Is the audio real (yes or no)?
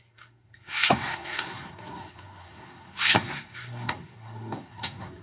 no